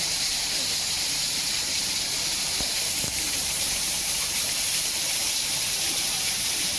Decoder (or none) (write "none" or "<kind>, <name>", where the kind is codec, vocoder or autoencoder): vocoder, BigVGAN v2